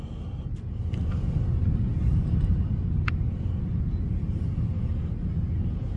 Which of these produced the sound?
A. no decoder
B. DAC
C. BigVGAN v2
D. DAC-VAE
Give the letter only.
A